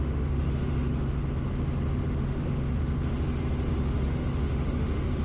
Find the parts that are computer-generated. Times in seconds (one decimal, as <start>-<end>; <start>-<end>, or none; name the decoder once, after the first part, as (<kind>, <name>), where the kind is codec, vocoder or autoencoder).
0.0-1.2 (autoencoder, DAC-VAE); 2.2-2.8; 3.7-5.2